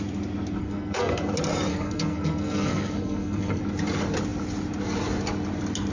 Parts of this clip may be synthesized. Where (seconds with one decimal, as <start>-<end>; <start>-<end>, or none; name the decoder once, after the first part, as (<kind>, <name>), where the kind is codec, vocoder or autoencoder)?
0.6-1.2 (codec, SNAC); 1.7-3.6